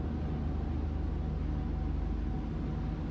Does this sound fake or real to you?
real